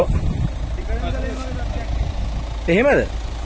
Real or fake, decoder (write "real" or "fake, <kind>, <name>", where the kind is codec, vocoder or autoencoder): real